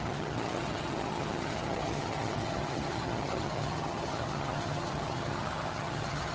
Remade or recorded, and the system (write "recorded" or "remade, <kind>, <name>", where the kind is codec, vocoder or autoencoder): remade, vocoder, HiFi-GAN